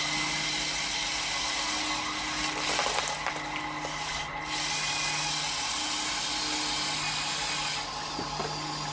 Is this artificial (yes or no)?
no